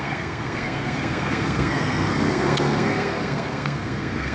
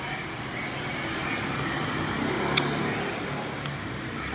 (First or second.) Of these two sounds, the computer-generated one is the first